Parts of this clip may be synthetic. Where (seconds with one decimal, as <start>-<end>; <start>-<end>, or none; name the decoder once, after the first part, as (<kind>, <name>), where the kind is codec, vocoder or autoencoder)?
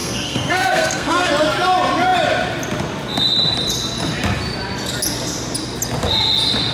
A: 0.0-1.3 (codec, SNAC)